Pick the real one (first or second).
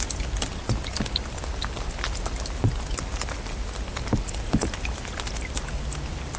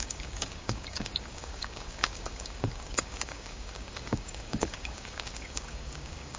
first